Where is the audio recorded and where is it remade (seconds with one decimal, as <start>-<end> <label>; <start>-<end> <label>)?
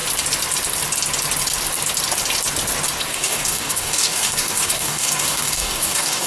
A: 0.0-3.1 recorded; 3.1-6.3 remade